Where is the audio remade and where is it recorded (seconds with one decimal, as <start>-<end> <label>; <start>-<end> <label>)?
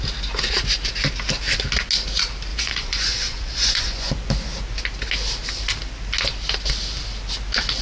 0.0-2.5 recorded; 2.5-4.1 remade; 4.1-7.8 recorded